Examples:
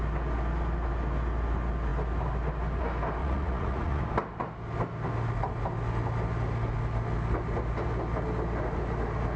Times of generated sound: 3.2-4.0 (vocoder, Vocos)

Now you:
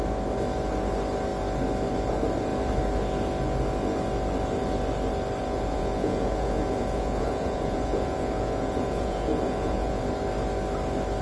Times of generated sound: 5.4-10.0 (vocoder, Vocos)

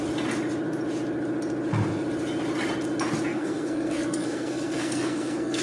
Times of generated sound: 3.3-5.6 (codec, SNAC)

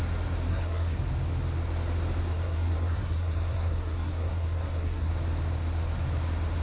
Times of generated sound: 0.5-1.0 (codec, SNAC); 2.2-5.1

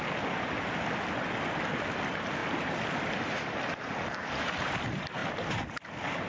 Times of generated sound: none

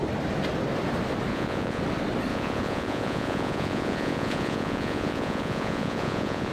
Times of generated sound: 1.3-1.8 (vocoder, Vocos); 2.3-6.5